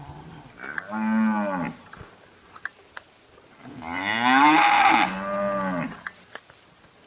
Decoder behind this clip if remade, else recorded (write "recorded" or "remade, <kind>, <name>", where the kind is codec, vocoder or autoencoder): recorded